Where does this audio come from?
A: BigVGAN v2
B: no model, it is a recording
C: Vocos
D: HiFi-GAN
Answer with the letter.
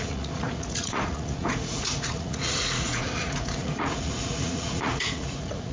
C